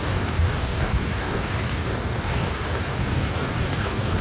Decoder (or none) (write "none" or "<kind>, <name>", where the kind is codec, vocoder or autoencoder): codec, DAC